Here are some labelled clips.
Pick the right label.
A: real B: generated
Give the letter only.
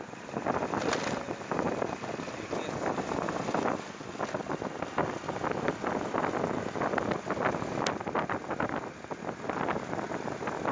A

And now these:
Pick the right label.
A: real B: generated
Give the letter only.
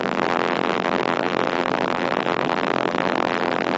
B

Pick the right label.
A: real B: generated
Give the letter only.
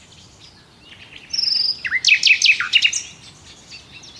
A